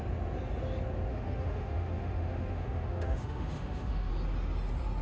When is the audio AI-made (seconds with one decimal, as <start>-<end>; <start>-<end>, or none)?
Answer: 1.1-4.1